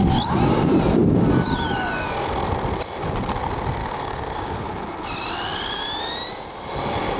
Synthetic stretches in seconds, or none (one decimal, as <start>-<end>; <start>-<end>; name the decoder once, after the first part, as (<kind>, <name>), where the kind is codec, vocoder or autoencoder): 3.8-4.6 (codec, DAC)

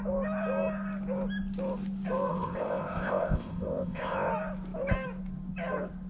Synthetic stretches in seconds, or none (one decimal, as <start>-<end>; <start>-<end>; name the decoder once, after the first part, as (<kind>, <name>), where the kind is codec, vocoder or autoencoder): 2.3-4.3 (codec, ZipCodec)

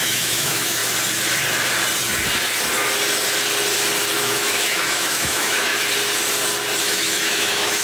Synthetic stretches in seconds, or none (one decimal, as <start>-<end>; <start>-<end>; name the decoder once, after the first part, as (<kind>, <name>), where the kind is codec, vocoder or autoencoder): 0.0-0.8 (autoencoder, DAC-VAE); 4.2-5.7; 6.8-7.8

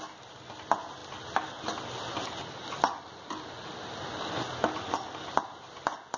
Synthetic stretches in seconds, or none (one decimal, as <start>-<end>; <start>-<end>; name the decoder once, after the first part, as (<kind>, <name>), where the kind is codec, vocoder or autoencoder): none

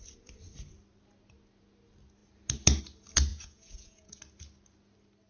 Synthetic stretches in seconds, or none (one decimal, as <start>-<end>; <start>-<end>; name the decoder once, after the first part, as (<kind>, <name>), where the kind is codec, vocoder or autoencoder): 3.3-4.2 (vocoder, Vocos)

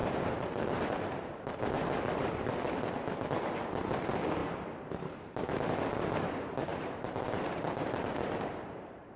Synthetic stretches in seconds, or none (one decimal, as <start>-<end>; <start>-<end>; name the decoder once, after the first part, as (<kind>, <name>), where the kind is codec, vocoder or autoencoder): 0.0-2.5 (vocoder, BigVGAN v2); 4.4-5.7; 6.7-9.2

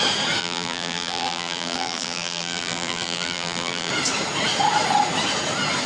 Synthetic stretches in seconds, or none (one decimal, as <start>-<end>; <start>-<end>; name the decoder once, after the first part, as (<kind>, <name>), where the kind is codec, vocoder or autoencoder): 0.4-3.9 (vocoder, BigVGAN v2)